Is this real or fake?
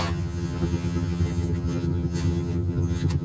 fake